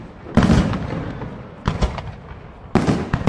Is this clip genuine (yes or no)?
yes